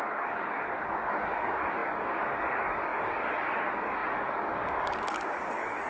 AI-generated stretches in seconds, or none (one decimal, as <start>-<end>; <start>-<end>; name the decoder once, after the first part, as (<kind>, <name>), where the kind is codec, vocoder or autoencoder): 0.0-5.9 (codec, DAC)